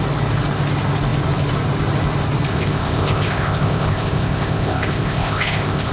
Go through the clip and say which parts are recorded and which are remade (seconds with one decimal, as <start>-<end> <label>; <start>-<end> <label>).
0.0-2.5 recorded; 2.5-5.9 remade